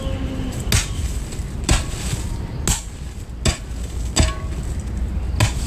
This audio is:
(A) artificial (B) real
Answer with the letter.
B